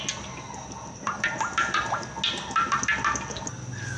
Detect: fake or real real